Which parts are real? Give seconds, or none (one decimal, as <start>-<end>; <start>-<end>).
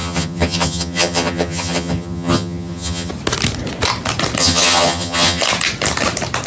3.1-4.4; 5.4-6.5